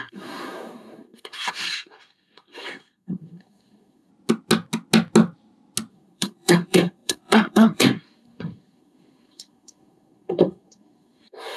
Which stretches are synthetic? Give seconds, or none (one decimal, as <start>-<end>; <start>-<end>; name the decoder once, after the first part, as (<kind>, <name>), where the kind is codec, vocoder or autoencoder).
0.0-4.1 (codec, SNAC); 5.9-11.6